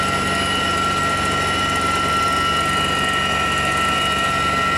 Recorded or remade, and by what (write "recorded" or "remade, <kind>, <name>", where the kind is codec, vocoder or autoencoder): recorded